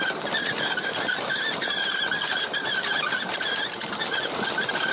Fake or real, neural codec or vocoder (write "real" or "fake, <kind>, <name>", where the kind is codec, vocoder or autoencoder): real